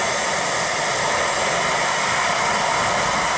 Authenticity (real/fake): real